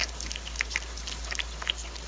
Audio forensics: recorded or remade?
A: recorded